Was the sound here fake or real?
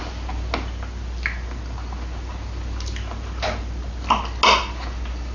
real